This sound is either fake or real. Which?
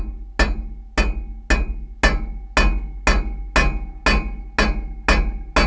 real